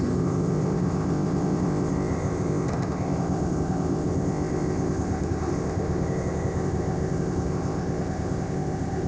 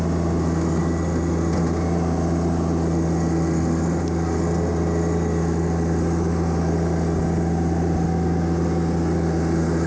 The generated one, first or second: first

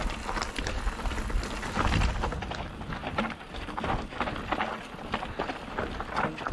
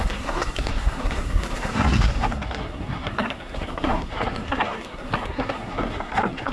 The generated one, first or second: second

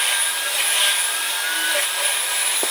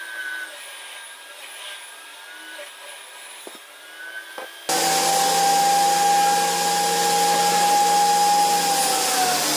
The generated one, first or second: first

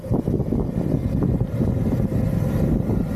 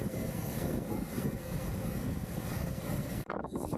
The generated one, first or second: second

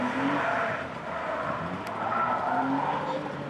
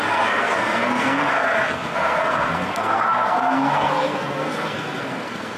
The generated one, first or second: second